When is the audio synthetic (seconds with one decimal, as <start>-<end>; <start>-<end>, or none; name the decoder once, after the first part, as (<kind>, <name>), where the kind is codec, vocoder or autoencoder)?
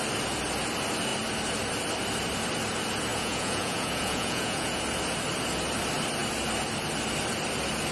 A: 3.1-4.8 (vocoder, Vocos)